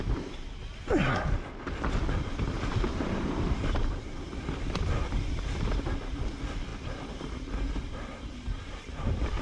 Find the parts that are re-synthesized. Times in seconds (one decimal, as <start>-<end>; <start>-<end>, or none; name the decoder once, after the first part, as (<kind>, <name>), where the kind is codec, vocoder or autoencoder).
none

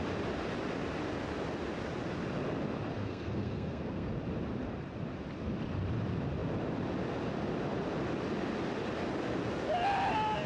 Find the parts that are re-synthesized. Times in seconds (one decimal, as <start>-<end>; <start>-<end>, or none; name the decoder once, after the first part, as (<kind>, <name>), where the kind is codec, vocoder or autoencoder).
3.0-4.1 (codec, SNAC)

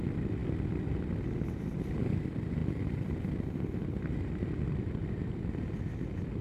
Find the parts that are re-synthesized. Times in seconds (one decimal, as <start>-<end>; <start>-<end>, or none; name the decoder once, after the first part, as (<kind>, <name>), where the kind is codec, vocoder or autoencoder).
none

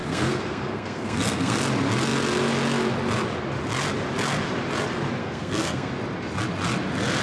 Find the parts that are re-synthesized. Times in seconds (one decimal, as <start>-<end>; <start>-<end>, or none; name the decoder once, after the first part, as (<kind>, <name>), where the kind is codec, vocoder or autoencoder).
0.0-1.6 (codec, SNAC); 5.2-5.9

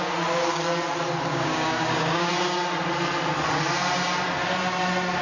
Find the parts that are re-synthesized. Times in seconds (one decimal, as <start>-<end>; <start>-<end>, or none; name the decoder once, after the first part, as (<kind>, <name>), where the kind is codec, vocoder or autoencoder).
1.3-2.3 (codec, DAC)

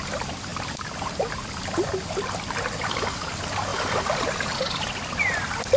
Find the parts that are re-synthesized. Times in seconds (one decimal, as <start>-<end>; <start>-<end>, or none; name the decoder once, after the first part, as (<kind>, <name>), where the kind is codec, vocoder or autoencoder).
none

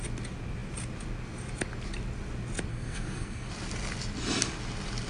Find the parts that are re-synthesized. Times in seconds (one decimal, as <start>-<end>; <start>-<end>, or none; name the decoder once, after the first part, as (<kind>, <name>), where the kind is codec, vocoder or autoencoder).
2.7-3.5 (codec, SNAC)